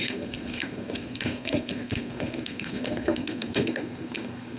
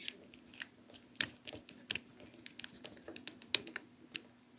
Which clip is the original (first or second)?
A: second